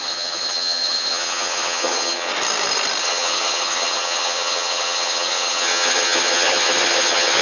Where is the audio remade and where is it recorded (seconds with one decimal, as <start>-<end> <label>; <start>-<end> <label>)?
0.0-2.3 remade; 2.3-3.0 recorded; 3.0-7.4 remade